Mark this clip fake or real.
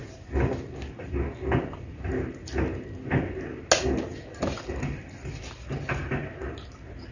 real